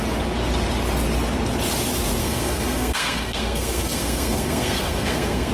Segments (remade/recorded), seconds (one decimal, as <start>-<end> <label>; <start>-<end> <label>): 0.0-2.2 recorded; 2.2-5.5 remade